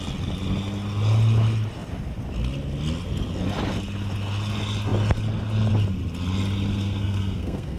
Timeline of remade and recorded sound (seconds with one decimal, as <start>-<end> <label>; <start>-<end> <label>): 0.0-6.7 recorded; 6.7-7.8 remade